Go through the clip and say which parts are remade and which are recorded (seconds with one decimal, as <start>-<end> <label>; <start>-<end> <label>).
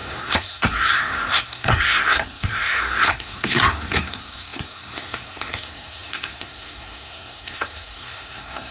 0.0-8.7 remade